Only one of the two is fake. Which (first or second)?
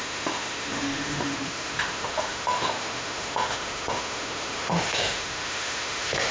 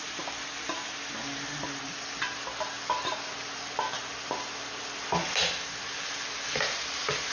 first